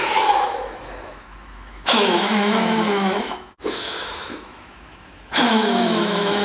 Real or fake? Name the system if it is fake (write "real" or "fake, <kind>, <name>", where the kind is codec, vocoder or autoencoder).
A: fake, autoencoder, DAC-VAE